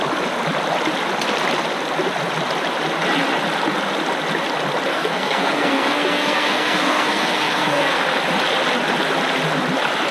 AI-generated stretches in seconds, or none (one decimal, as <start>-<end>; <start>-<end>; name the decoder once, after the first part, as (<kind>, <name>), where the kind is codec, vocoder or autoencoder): 4.9-8.0 (codec, SNAC)